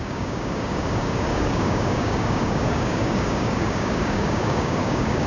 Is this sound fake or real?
fake